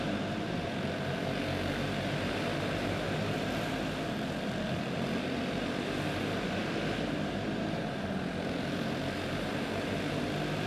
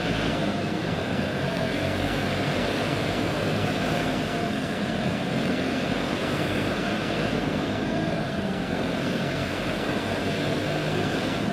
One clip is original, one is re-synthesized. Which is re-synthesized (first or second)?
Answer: second